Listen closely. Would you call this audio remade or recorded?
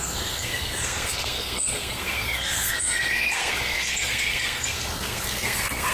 remade